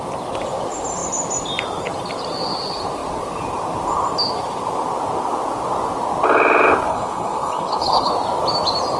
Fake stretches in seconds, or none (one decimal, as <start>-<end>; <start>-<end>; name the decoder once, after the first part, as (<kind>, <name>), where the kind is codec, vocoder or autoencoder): 6.9-8.1 (codec, HILCodec)